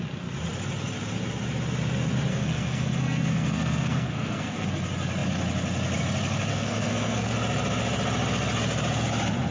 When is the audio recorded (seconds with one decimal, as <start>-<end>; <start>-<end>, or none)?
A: 0.0-2.3; 4.7-6.5; 7.3-9.5